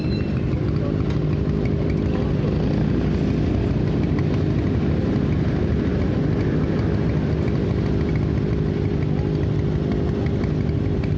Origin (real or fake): real